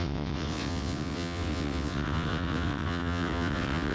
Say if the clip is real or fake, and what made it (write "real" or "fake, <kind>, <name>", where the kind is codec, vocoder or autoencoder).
fake, vocoder, WaveNeXt